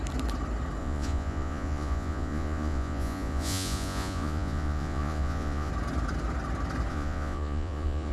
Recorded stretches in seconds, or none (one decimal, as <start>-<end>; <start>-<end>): 0.0-0.8; 5.7-6.9